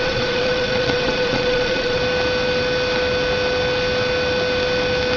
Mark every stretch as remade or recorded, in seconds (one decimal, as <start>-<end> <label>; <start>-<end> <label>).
0.0-2.0 remade; 2.0-5.2 recorded